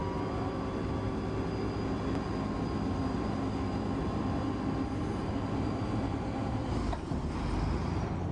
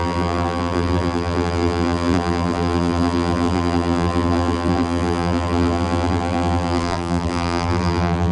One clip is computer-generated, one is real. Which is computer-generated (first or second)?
second